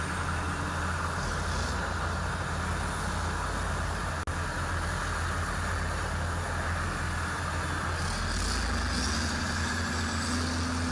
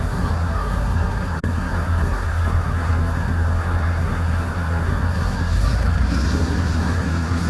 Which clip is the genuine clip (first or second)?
first